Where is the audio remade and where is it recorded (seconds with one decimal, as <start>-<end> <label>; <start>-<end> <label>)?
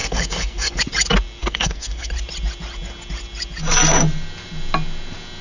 0.0-0.8 remade; 0.8-1.4 recorded; 1.4-2.1 remade; 2.1-5.4 recorded